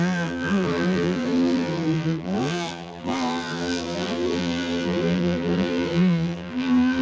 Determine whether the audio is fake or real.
fake